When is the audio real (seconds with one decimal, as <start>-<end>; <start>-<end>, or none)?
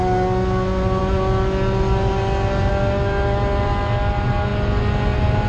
0.0-5.5